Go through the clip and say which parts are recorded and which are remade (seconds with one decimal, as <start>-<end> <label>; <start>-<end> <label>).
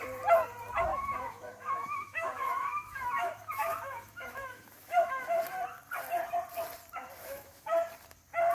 0.0-0.9 recorded; 0.9-5.4 remade; 5.4-7.2 recorded; 7.2-7.9 remade; 7.9-8.5 recorded